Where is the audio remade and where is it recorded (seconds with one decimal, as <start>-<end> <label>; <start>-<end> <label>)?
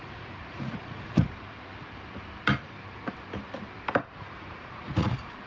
0.0-1.2 remade; 1.2-4.0 recorded; 4.0-5.5 remade